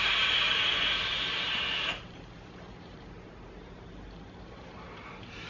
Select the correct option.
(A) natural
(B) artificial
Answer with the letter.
B